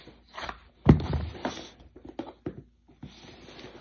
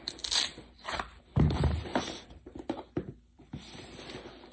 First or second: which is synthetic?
second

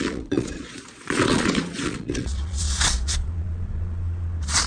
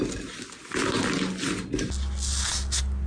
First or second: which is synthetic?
first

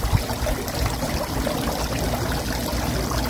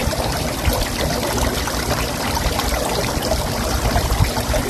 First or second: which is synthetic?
second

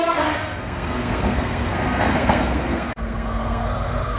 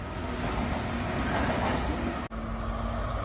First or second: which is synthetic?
first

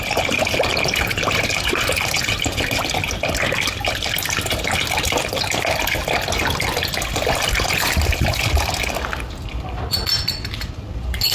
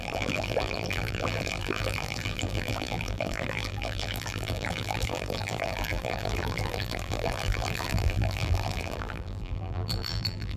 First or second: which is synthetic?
second